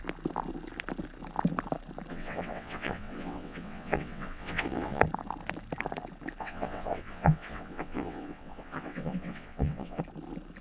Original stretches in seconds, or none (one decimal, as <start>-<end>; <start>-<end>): 0.0-2.1; 5.0-6.4; 10.0-10.6